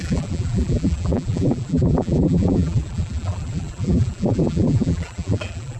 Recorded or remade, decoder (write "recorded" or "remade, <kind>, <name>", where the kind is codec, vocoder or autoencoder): remade, vocoder, BigVGAN v2